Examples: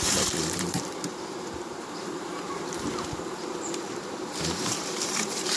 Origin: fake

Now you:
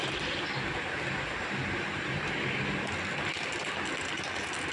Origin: real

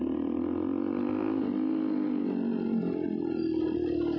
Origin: real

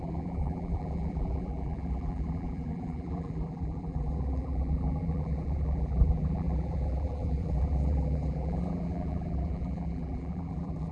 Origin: fake